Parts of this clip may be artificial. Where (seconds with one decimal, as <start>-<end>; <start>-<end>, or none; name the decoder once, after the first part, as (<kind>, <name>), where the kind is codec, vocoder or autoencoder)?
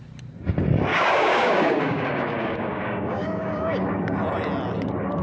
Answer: 0.9-3.8 (codec, DAC)